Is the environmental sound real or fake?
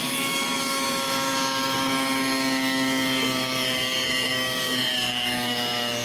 fake